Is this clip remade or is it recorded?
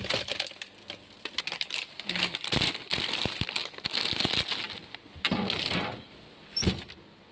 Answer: recorded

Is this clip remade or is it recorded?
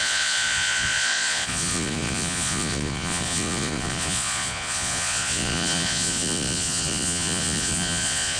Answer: remade